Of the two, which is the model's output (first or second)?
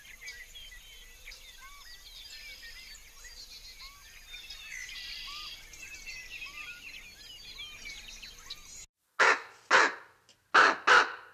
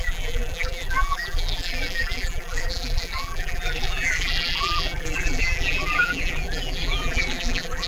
second